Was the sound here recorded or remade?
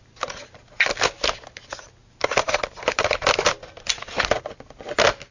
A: recorded